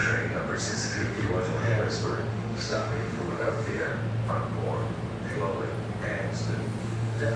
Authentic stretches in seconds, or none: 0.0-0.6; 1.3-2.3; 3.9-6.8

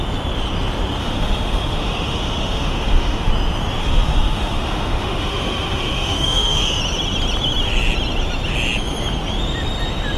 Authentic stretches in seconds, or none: 0.0-1.0; 3.3-3.8; 6.8-10.2